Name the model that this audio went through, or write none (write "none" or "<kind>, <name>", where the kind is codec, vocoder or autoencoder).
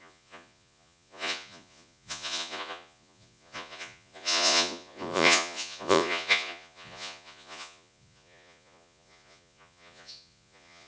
vocoder, Vocos